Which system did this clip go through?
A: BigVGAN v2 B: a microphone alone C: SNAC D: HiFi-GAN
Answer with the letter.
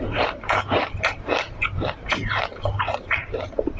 A